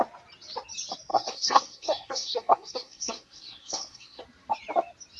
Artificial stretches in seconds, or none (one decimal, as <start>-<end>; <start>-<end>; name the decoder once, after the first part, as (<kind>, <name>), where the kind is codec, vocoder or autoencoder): 1.1-4.2 (codec, SNAC)